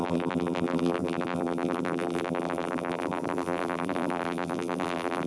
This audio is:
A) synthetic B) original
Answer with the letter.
A